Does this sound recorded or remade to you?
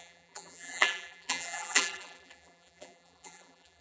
remade